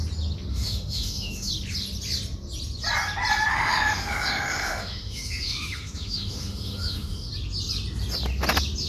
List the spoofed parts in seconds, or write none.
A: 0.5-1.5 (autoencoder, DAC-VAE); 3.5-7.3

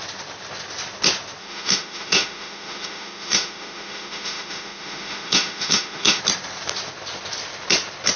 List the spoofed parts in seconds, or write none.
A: 1.4-6.2 (autoencoder, DAC-VAE)

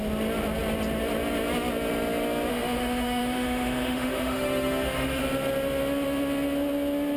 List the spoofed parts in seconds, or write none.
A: 2.5-5.2 (autoencoder, DAC-VAE)

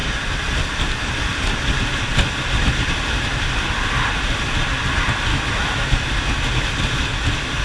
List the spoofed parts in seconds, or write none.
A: 5.3-6.1 (autoencoder, DAC-VAE)

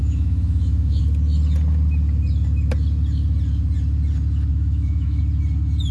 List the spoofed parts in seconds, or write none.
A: 0.0-1.0 (autoencoder, DAC-VAE); 4.5-5.2

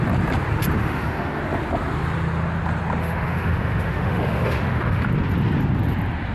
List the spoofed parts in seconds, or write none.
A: 0.8-1.4 (autoencoder, DAC-VAE); 3.0-5.0